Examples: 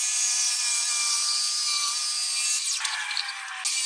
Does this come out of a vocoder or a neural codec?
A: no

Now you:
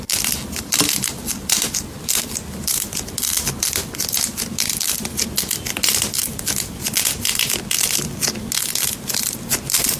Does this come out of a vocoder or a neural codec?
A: no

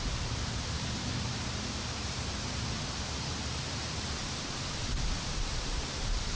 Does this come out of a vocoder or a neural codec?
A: yes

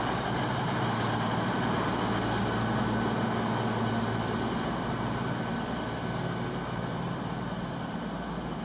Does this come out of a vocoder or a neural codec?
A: no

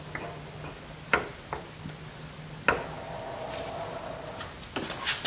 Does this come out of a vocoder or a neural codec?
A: no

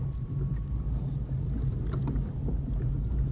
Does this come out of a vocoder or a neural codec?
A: no